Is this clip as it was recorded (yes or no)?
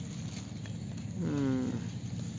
yes